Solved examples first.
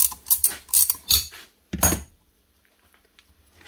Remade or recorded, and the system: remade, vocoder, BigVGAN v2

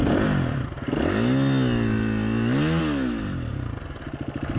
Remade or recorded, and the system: recorded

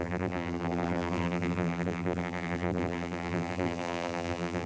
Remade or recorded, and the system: remade, vocoder, BigVGAN v2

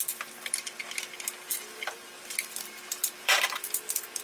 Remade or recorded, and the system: remade, vocoder, BigVGAN v2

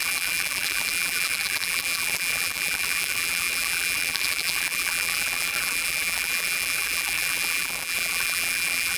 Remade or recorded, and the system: remade, vocoder, BigVGAN v2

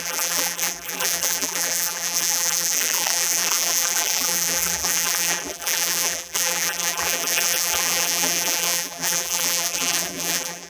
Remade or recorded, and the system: remade, vocoder, BigVGAN v2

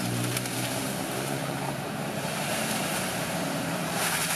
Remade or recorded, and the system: remade, vocoder, BigVGAN v2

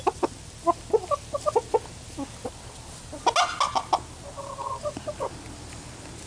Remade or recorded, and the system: recorded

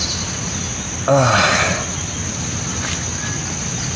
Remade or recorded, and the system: recorded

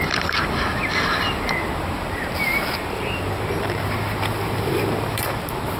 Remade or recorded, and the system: remade, vocoder, BigVGAN v2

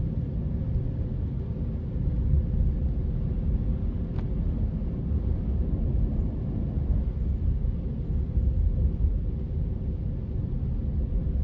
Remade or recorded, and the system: recorded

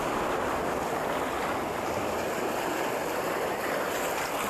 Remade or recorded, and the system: recorded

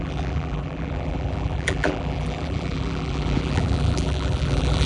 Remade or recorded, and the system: remade, vocoder, BigVGAN v2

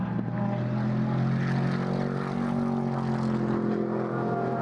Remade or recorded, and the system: recorded